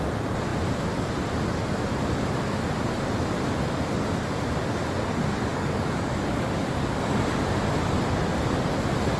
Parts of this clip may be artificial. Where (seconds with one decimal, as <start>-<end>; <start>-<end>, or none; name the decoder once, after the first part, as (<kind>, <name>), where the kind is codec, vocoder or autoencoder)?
5.5-7.4 (codec, DAC)